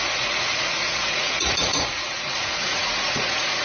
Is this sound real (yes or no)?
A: no